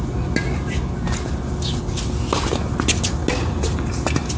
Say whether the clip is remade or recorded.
recorded